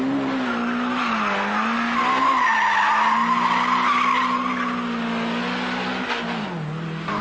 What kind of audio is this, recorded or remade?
recorded